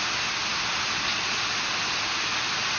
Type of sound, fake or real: real